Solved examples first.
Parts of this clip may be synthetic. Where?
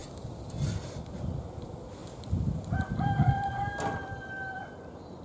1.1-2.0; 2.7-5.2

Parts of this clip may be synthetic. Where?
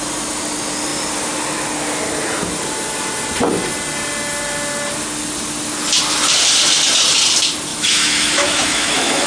7.7-9.3